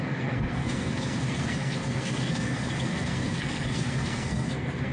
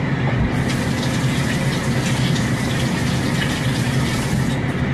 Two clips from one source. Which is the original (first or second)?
second